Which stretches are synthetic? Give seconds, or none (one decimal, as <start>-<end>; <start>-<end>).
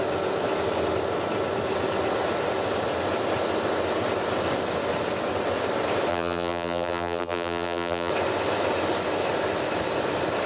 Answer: 6.1-8.1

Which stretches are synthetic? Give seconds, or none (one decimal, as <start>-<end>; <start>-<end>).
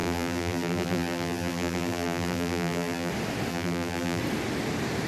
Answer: 0.0-3.1; 3.5-4.2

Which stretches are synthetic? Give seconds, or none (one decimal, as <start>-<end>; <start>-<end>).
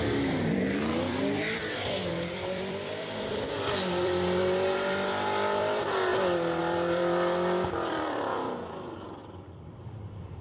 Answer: 0.0-6.1; 6.6-9.2; 9.7-10.4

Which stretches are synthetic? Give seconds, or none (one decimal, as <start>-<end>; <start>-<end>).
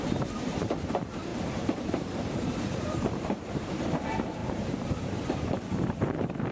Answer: 0.0-6.5